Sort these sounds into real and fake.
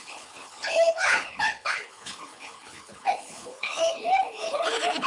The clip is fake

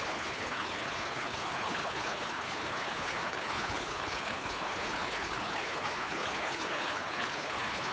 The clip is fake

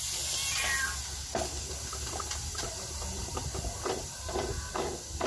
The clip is real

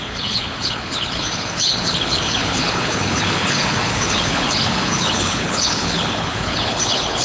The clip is fake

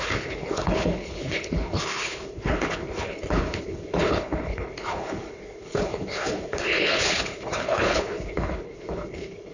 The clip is fake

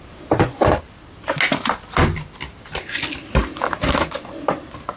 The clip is real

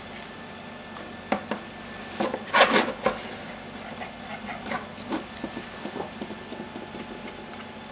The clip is real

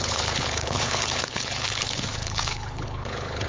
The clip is fake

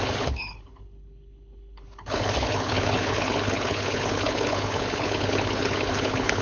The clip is fake